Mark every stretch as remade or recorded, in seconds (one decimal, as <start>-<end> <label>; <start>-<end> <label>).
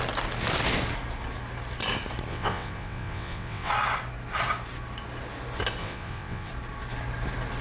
0.0-2.3 recorded; 2.3-3.7 remade; 3.7-5.8 recorded; 5.8-6.5 remade; 6.5-7.6 recorded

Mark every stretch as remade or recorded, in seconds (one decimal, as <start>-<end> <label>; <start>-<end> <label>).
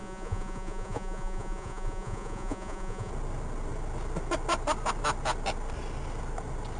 0.0-3.1 remade; 3.1-6.8 recorded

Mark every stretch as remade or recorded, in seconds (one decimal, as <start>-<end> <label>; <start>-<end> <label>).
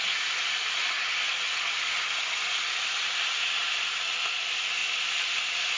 0.0-5.8 recorded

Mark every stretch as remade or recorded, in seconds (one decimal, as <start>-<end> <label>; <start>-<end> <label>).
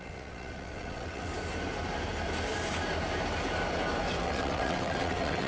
0.0-1.3 remade; 1.3-4.2 recorded; 4.2-5.5 remade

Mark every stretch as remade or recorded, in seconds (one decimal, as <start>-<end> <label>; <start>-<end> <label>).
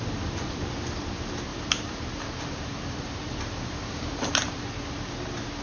0.0-1.5 recorded; 1.5-4.6 remade; 4.6-5.6 recorded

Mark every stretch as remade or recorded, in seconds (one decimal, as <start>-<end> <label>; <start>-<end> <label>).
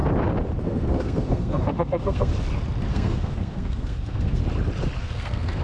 0.0-0.6 recorded; 0.6-2.3 remade; 2.3-2.9 recorded; 2.9-4.4 remade; 4.4-5.0 recorded; 5.0-5.6 remade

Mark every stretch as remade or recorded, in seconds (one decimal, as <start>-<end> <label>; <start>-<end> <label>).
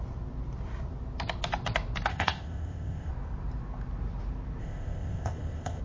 0.0-2.1 recorded; 2.1-3.1 remade; 3.1-4.6 recorded; 4.6-5.8 remade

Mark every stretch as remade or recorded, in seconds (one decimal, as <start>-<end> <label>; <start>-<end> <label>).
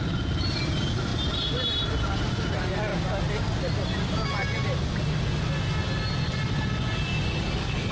0.0-7.1 recorded; 7.1-7.9 remade